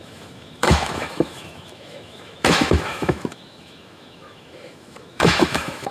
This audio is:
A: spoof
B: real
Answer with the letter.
A